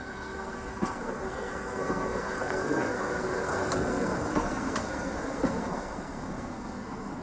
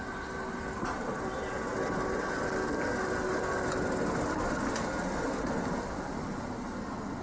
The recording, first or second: second